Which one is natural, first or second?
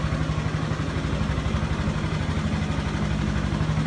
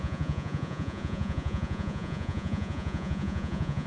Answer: first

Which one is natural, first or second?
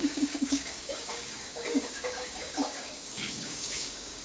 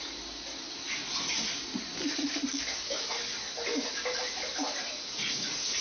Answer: second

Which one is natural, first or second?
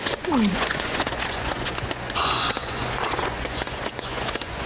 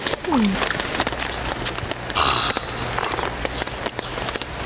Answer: second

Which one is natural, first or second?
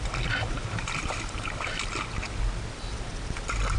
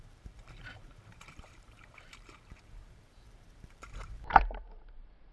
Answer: first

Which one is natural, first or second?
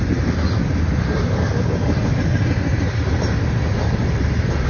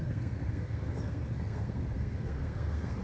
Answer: first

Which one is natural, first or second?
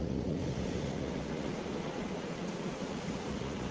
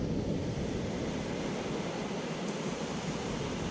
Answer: second